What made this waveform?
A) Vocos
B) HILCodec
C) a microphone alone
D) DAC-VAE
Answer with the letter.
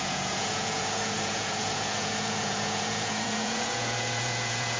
A